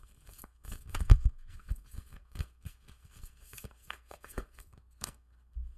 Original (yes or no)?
no